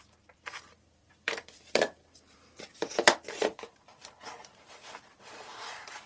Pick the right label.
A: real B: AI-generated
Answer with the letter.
B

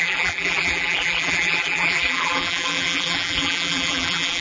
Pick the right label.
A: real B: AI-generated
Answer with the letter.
B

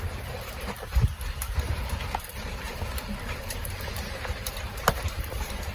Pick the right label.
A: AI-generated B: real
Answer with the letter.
A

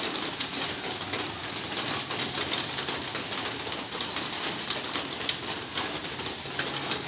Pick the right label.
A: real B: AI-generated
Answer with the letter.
A